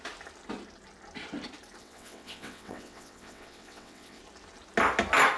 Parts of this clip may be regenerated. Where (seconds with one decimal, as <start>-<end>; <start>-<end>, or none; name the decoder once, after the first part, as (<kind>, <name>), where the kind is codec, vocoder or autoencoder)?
1.8-4.2 (vocoder, WaveNeXt)